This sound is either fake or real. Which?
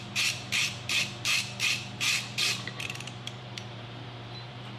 fake